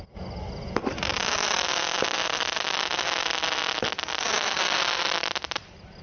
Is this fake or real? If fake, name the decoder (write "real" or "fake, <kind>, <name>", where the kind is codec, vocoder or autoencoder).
real